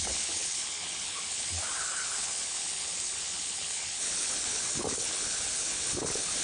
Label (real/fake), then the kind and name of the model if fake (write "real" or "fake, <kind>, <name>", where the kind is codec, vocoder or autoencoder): fake, codec, HILCodec